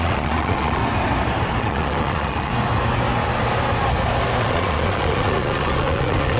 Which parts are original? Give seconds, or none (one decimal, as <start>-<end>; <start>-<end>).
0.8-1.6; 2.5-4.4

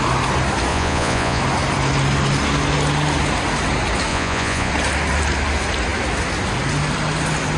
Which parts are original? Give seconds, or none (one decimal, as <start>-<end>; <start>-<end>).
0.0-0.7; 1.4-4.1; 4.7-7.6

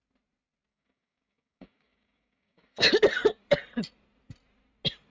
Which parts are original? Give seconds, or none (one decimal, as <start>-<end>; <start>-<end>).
0.0-0.7; 2.9-5.1

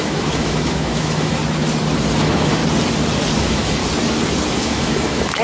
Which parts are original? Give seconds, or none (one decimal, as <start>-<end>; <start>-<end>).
1.4-2.2; 2.6-3.4; 3.8-4.5

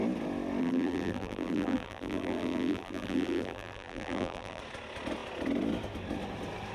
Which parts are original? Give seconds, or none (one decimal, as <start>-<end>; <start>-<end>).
0.0-0.6; 4.6-6.7